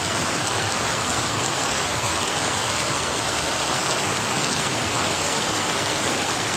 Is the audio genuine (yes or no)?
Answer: no